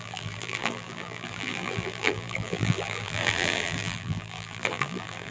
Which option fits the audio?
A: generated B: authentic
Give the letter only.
A